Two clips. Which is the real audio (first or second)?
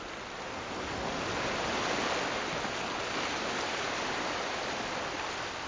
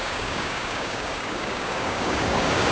first